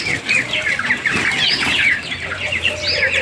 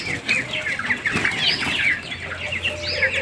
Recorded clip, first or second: second